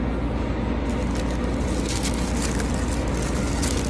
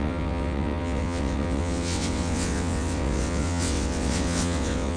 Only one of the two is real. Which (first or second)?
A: first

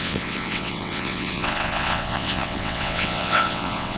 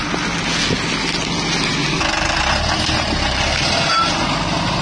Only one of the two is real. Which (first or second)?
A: second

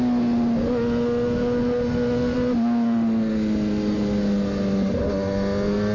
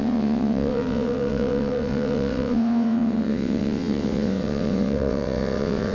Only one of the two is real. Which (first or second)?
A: first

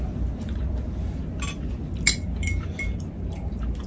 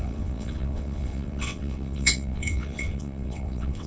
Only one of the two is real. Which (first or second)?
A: first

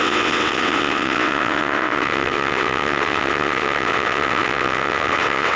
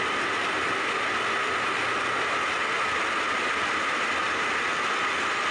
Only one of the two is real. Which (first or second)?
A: second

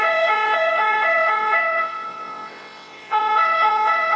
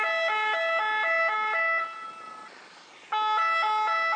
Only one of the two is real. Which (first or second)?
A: second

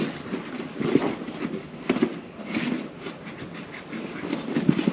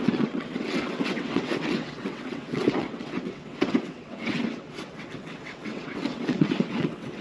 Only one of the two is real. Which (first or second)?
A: first